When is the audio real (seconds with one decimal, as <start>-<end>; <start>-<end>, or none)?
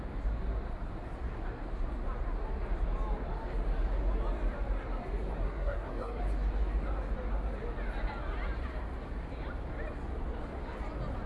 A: 0.0-5.4; 6.2-11.3